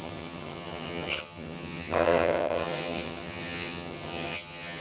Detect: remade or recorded remade